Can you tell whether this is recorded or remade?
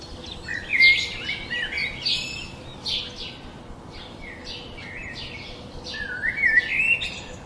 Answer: recorded